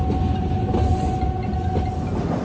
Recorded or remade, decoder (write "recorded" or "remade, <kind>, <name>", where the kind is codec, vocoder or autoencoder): recorded